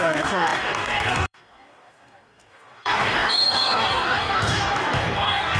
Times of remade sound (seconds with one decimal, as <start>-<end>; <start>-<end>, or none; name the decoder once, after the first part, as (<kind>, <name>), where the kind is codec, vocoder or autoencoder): 0.0-5.6 (codec, DAC)